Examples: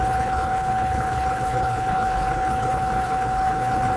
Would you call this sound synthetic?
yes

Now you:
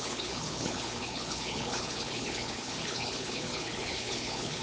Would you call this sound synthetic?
yes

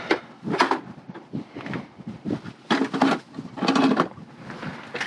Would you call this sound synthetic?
no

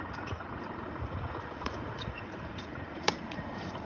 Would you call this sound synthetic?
yes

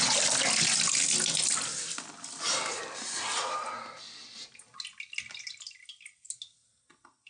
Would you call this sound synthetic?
no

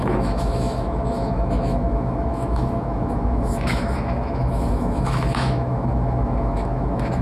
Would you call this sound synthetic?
yes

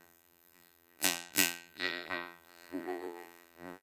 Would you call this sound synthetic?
yes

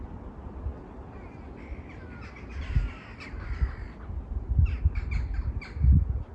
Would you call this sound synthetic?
no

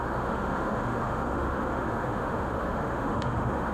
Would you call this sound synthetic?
yes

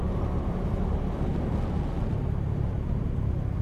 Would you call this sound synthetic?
no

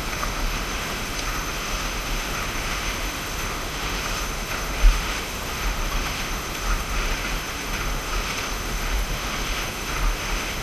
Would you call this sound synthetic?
yes